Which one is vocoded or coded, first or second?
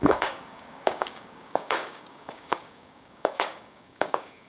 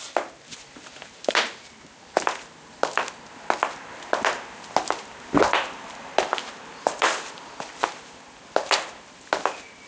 first